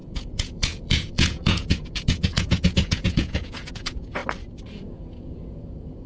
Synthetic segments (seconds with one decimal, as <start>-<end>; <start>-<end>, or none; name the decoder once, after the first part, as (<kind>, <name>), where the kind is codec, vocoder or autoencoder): 0.0-4.2 (vocoder, Vocos); 4.8-6.1